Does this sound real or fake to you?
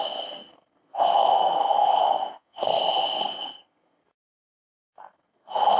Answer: fake